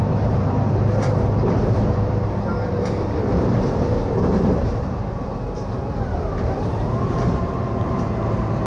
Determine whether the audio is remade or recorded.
remade